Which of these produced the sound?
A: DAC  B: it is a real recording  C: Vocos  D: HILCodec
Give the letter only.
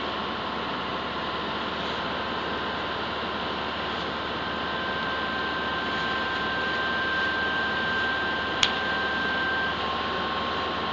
B